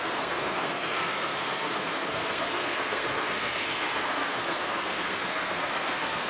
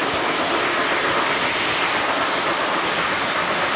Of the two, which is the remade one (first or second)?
first